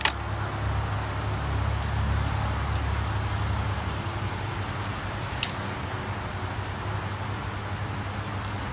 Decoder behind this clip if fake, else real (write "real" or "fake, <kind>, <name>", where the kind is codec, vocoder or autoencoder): real